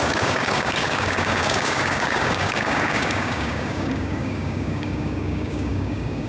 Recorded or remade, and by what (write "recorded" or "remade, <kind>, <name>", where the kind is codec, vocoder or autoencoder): remade, codec, DAC